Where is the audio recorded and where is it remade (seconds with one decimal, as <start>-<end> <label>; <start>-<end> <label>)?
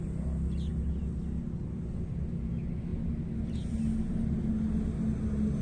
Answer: 0.0-5.6 recorded